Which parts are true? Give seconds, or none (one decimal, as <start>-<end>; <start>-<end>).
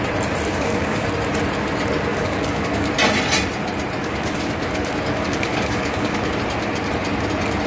0.0-0.5; 1.1-2.1; 2.9-4.0; 6.3-7.7